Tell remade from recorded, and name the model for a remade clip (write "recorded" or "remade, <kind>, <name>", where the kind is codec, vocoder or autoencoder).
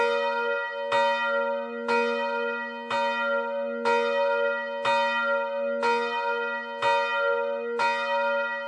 recorded